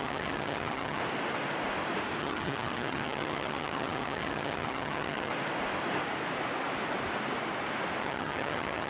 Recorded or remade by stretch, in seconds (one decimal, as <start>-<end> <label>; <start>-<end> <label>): 0.0-1.0 remade; 1.0-2.2 recorded; 2.2-5.3 remade; 5.3-8.0 recorded; 8.0-8.9 remade